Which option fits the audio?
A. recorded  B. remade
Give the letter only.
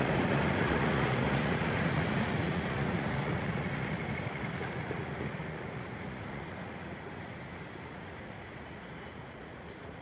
B